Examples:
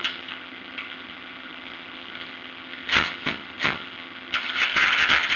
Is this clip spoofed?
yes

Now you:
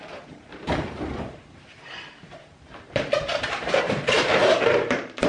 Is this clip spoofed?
yes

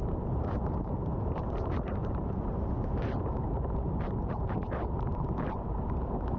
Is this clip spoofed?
yes